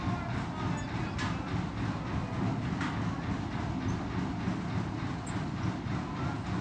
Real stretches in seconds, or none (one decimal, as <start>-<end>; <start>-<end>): 0.0-6.6